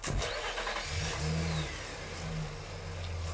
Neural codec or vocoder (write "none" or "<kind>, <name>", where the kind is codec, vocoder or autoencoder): none